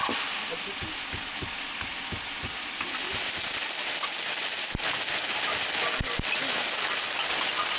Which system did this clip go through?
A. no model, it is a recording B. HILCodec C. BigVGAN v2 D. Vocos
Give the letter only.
A